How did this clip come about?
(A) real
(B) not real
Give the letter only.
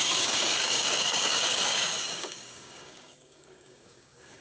B